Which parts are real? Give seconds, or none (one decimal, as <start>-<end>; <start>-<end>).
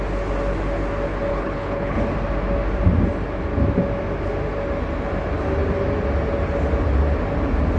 0.0-1.3; 2.0-7.8